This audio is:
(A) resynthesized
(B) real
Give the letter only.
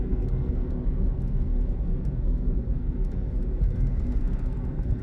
A